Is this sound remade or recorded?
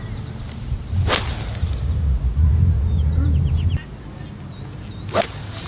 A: recorded